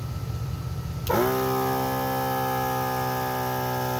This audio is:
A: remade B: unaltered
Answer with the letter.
B